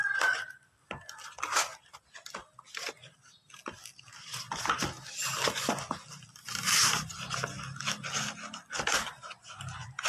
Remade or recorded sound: recorded